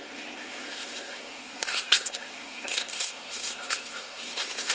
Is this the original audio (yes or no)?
no